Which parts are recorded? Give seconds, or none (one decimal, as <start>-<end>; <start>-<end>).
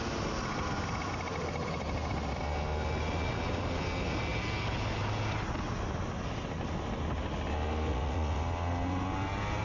0.0-7.9; 8.4-9.6